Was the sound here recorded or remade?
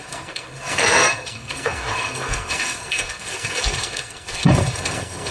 remade